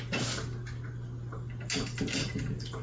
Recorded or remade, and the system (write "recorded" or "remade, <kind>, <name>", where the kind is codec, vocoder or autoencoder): recorded